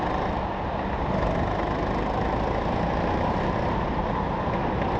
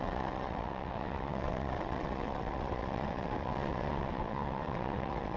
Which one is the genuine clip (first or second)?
first